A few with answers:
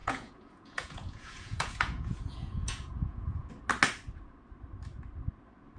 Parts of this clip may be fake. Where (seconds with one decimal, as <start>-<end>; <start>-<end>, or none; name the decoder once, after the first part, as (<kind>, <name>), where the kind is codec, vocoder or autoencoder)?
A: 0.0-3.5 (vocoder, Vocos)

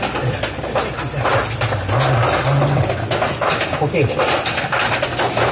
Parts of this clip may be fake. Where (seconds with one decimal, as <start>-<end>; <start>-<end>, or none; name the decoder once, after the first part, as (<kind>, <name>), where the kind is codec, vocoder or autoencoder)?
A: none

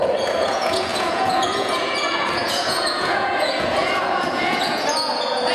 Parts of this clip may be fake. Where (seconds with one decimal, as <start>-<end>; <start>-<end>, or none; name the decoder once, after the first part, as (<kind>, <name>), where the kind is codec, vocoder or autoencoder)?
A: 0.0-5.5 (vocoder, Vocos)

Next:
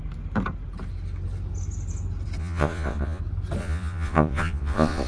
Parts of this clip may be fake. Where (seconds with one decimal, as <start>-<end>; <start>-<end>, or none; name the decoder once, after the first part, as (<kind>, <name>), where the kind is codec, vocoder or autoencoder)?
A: 2.4-3.2 (vocoder, Vocos); 3.6-5.1

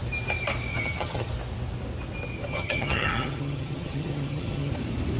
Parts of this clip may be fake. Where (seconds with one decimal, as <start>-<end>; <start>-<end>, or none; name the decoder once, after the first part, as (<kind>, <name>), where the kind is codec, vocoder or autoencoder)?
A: 0.7-1.3 (vocoder, HiFi-GAN); 2.5-4.7